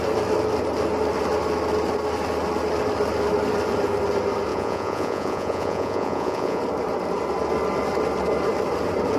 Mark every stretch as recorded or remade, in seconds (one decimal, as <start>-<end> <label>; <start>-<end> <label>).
0.0-4.5 recorded; 4.5-6.6 remade; 6.6-9.2 recorded

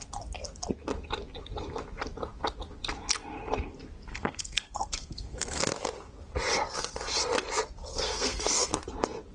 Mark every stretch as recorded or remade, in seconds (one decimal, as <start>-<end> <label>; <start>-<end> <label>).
0.0-4.1 recorded; 4.1-5.6 remade; 5.6-7.9 recorded; 7.9-8.7 remade; 8.7-9.3 recorded

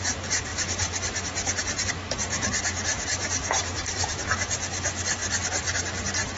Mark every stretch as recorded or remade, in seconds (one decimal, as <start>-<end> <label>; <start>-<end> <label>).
0.0-3.4 recorded; 3.4-4.2 remade; 4.2-6.4 recorded